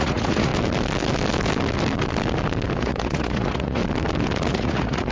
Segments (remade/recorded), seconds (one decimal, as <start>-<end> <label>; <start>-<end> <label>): 0.0-0.5 remade; 0.5-2.8 recorded; 2.8-3.8 remade; 3.8-4.5 recorded; 4.5-5.1 remade